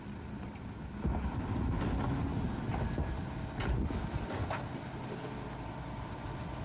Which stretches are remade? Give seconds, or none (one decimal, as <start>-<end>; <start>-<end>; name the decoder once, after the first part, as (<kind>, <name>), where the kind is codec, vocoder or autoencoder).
none